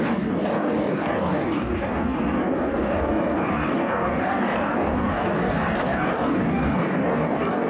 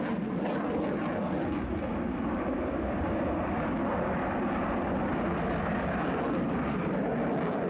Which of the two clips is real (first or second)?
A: second